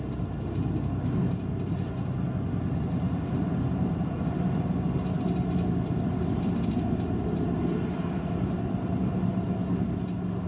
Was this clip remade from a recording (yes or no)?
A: no